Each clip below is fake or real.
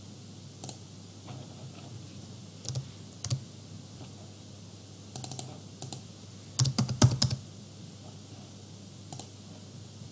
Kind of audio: real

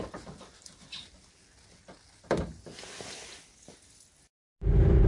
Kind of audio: real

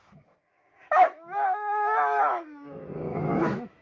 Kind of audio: fake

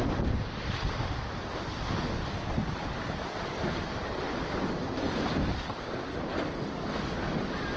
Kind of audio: real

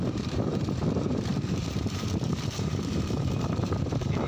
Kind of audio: fake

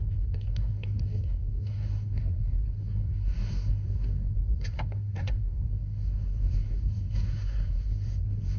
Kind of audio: fake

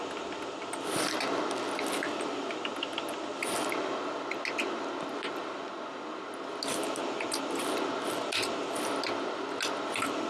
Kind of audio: real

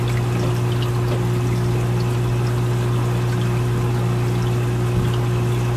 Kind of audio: real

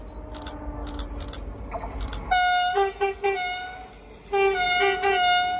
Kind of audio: real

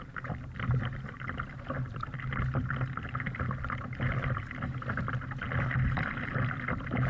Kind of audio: real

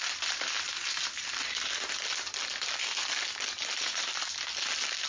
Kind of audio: real